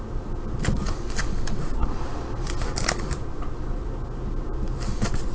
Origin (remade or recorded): recorded